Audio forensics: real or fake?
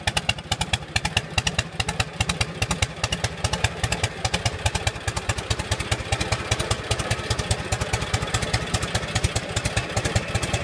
real